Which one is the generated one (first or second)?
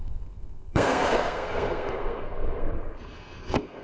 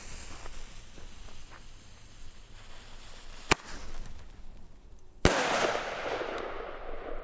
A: first